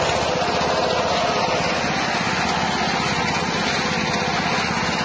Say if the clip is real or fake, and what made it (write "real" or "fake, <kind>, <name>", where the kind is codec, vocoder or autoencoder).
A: real